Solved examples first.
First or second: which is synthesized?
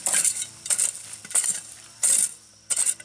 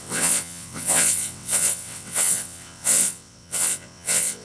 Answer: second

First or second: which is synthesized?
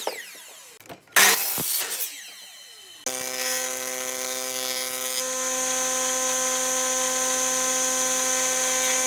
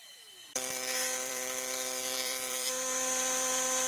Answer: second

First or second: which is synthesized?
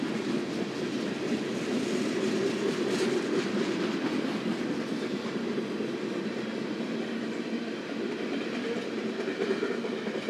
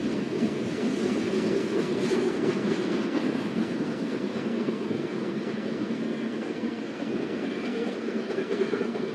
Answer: second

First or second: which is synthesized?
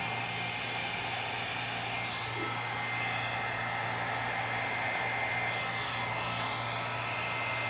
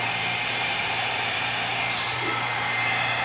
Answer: second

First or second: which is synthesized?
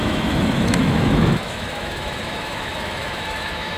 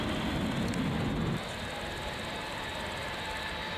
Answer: first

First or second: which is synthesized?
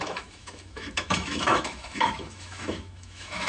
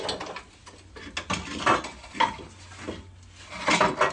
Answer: first